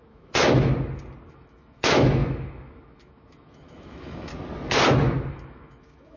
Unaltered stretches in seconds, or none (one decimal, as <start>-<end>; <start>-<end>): 0.7-1.3; 4.3-5.3